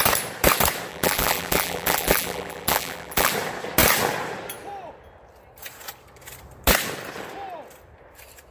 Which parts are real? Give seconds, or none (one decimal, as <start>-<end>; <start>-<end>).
0.0-0.9; 3.3-8.5